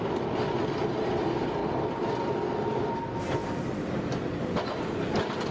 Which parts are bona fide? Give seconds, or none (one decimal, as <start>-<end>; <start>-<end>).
0.0-5.5